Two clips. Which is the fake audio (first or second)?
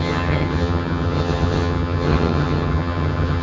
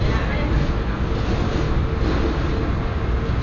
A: first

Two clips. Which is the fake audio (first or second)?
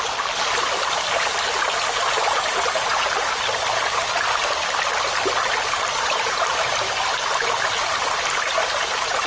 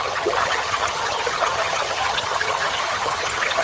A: second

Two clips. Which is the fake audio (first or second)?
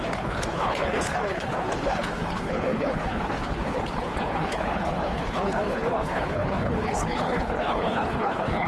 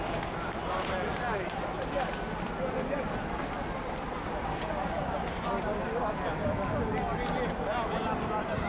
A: first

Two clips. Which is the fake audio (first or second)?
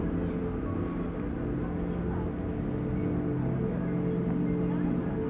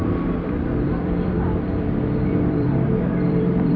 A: second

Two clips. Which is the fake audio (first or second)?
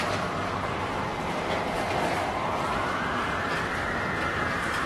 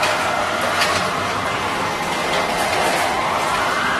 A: first